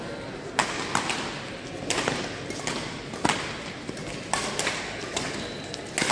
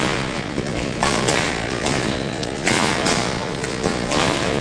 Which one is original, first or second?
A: first